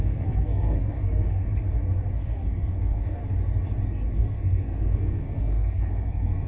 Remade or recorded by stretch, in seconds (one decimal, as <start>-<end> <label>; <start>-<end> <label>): 0.0-1.4 remade; 1.4-2.1 recorded; 2.1-3.2 remade; 3.2-4.1 recorded; 4.1-6.5 remade